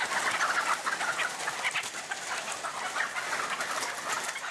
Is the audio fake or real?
real